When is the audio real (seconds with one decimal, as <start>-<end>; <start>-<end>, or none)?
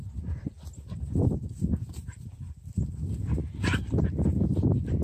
2.8-5.0